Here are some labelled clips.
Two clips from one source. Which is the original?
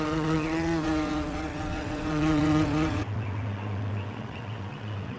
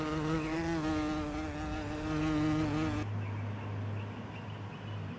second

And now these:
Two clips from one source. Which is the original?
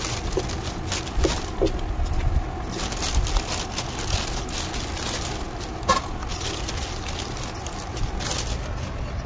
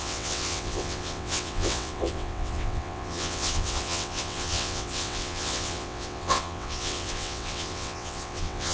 first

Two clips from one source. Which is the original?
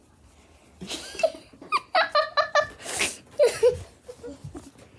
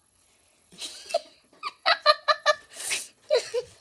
first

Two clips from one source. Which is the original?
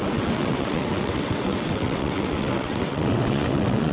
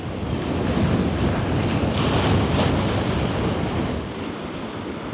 second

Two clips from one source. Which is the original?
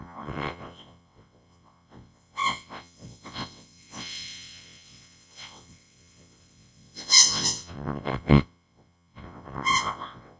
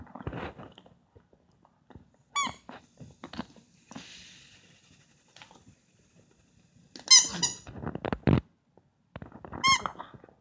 second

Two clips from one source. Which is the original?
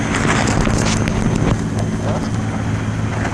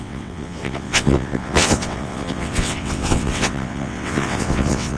first